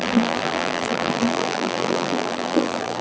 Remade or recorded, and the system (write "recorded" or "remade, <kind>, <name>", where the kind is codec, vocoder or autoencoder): remade, vocoder, BigVGAN v2